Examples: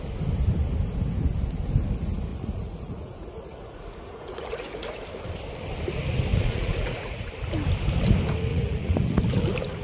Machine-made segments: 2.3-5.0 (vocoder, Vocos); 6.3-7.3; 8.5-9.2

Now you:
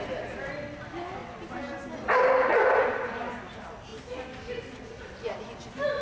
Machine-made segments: none

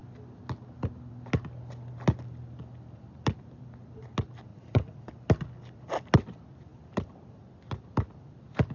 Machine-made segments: 4.5-5.1 (vocoder, Vocos)

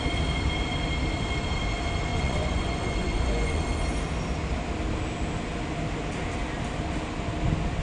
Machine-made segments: 2.1-3.6 (vocoder, Vocos)

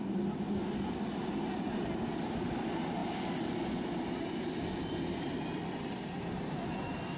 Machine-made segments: none

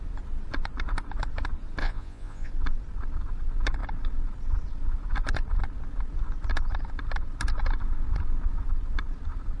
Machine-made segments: 1.8-2.5 (vocoder, Vocos)

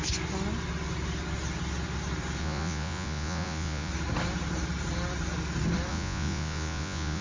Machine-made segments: 2.4-3.9 (vocoder, Vocos); 5.9-7.2